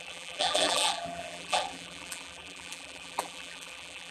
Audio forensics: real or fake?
fake